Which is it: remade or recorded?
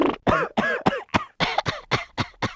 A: recorded